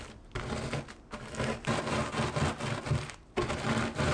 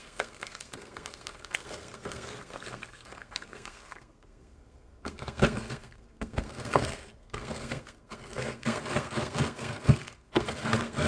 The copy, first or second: second